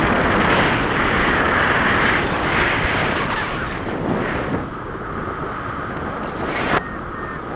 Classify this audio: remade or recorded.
recorded